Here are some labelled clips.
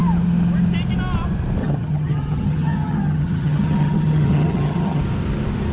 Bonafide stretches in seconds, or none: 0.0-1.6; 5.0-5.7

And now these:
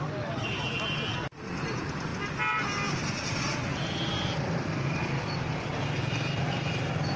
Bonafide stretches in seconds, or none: 0.0-7.2

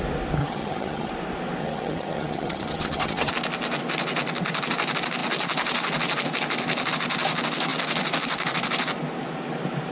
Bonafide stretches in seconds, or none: 0.0-0.4; 1.1-1.6; 3.3-9.9